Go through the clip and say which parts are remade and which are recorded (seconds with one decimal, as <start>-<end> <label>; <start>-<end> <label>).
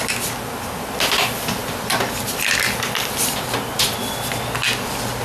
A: 0.0-5.2 recorded